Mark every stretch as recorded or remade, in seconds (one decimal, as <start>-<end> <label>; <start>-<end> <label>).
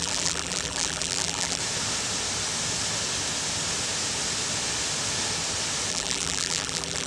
0.0-1.6 remade; 1.6-5.9 recorded; 5.9-7.1 remade